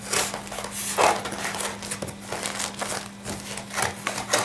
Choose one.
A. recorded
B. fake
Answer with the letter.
A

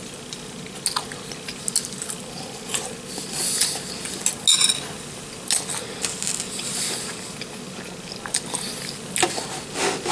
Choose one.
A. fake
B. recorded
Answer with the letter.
B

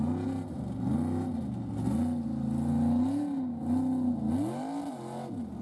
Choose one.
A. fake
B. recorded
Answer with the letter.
B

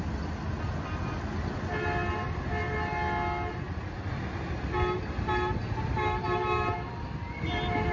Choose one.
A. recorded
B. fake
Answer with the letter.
A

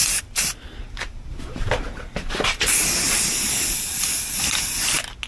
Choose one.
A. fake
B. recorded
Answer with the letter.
B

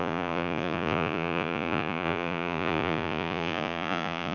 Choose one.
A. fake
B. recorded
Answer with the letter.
A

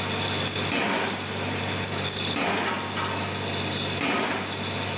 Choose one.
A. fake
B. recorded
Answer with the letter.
B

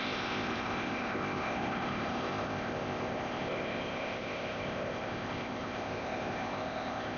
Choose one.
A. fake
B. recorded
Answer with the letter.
A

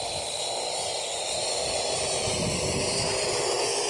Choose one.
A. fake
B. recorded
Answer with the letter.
B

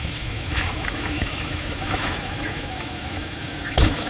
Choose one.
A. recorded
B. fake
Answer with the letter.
B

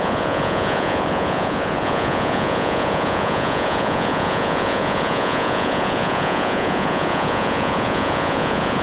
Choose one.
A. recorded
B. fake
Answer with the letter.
B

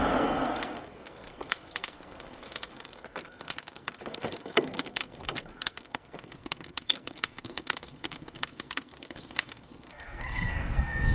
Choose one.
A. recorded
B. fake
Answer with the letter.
B